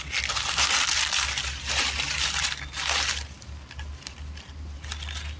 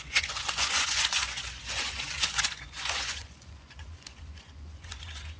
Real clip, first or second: first